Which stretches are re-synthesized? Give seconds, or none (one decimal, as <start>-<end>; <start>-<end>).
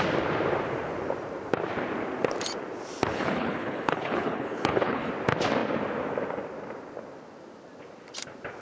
3.1-5.1